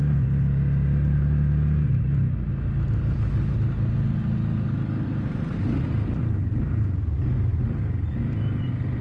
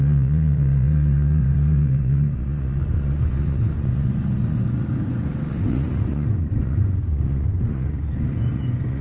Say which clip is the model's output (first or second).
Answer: second